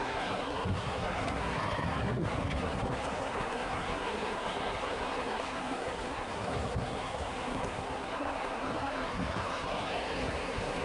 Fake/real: fake